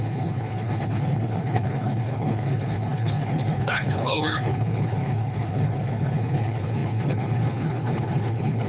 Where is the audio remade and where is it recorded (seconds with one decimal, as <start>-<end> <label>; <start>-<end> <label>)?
0.0-8.7 remade